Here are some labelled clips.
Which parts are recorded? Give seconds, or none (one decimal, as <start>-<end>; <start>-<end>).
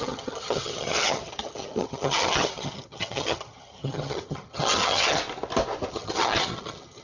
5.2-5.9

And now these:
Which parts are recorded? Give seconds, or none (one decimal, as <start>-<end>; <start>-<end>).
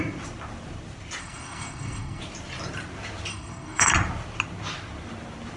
0.0-1.2; 2.2-3.3; 3.9-5.6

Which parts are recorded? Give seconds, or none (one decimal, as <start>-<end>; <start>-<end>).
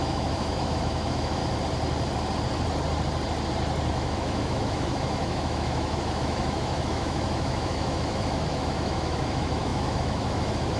1.4-3.9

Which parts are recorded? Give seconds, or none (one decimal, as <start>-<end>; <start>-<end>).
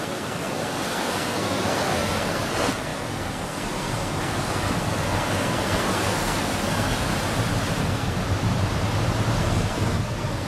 7.1-7.8; 8.2-9.4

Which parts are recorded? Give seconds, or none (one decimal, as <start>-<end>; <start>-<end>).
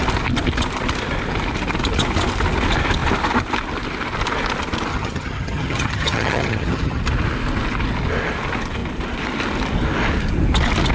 0.0-4.9; 7.0-10.9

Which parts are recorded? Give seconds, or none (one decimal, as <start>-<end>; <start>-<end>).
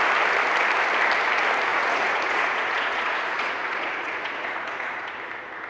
0.0-1.7; 5.1-5.7